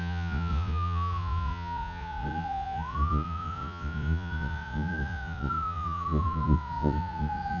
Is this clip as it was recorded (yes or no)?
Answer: no